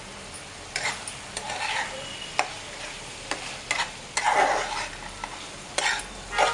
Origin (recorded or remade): recorded